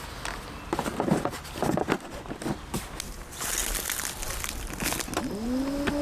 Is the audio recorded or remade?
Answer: recorded